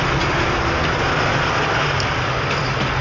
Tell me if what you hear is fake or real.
real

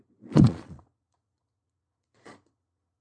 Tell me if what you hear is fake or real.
fake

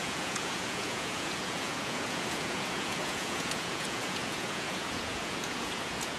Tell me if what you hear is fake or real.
fake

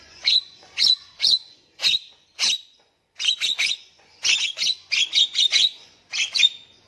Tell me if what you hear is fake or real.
fake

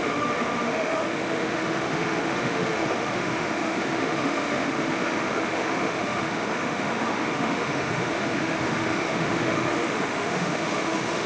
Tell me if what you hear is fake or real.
fake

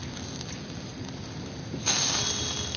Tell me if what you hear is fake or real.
real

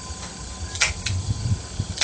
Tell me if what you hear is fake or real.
real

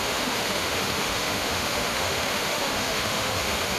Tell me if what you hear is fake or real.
fake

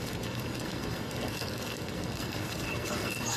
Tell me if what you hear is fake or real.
fake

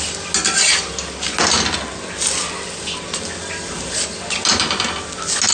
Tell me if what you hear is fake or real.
real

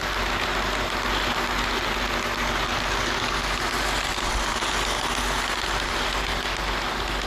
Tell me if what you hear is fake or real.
real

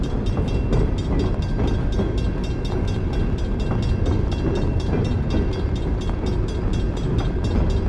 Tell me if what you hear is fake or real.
real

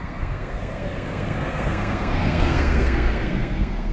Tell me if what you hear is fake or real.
fake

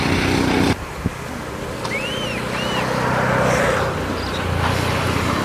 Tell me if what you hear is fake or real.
real